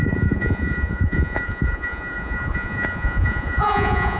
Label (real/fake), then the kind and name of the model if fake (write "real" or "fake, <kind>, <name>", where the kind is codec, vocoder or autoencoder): fake, vocoder, Vocos